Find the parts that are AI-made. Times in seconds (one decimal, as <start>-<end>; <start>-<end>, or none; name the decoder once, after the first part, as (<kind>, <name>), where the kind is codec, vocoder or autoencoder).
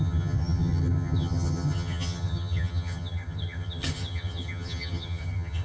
0.0-5.6 (vocoder, HiFi-GAN)